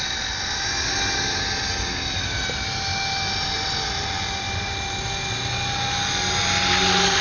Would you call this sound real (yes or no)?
yes